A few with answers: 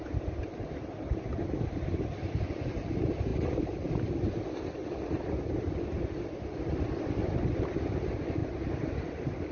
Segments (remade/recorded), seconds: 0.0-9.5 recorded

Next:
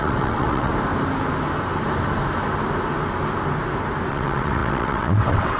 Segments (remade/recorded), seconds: 0.0-0.7 remade; 0.7-4.1 recorded; 4.1-5.6 remade

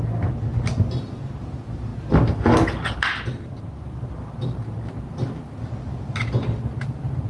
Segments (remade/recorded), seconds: 0.0-7.3 recorded